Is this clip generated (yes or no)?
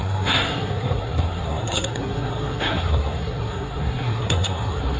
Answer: yes